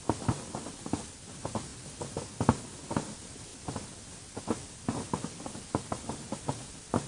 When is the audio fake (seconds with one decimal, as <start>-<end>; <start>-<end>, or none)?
none